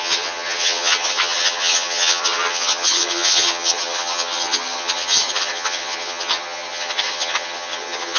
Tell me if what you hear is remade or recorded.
remade